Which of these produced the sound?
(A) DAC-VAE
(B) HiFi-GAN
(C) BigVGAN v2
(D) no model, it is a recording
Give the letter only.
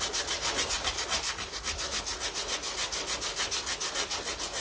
D